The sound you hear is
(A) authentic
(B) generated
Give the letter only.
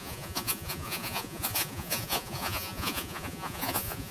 B